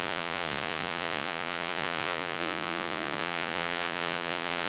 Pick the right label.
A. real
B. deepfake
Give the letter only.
B